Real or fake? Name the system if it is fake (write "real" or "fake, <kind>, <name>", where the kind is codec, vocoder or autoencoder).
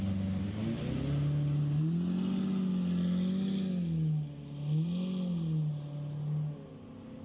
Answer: real